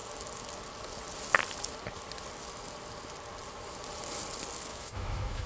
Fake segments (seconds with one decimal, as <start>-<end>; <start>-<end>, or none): 4.7-5.5